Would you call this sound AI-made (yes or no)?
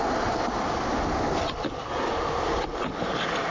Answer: no